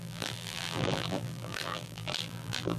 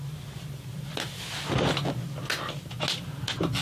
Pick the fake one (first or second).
first